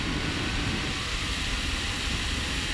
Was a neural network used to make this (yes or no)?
yes